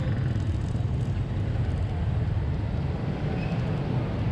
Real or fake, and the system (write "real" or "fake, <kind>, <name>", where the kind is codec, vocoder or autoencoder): real